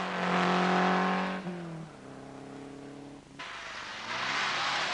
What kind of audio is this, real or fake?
real